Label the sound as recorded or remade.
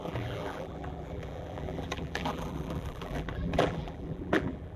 remade